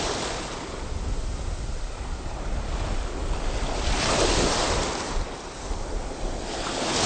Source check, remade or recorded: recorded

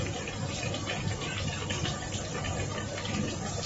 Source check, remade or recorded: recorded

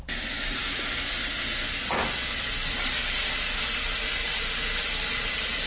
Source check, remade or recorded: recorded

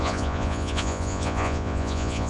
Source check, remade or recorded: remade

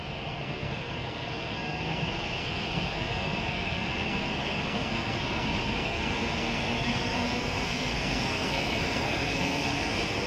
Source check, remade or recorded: remade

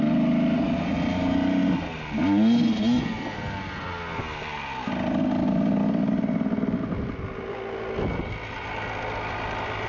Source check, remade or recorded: recorded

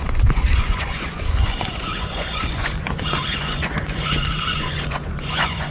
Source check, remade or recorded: remade